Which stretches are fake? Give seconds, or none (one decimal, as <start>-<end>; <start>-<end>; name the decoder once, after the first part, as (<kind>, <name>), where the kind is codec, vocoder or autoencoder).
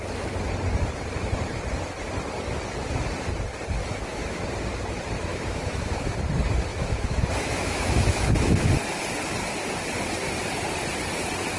3.8-4.4 (autoencoder, DAC-VAE); 5.3-6.2; 6.7-8.7